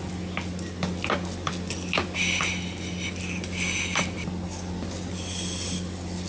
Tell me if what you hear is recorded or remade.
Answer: recorded